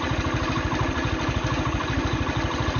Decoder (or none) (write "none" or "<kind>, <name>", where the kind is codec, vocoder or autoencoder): none